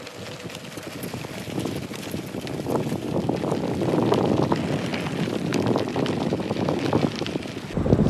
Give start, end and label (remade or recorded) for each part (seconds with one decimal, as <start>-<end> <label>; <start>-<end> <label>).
0.0-8.1 recorded